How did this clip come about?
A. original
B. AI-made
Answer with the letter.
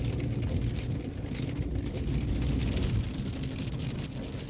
A